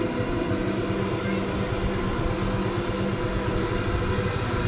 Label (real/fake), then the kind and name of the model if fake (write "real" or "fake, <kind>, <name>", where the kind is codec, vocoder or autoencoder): real